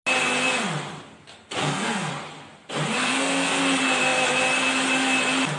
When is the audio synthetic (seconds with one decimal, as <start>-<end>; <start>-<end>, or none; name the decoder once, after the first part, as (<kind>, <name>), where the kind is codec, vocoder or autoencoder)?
1.6-2.1 (codec, SNAC); 3.0-3.6